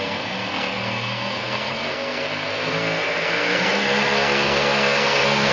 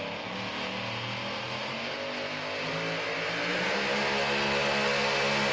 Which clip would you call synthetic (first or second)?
first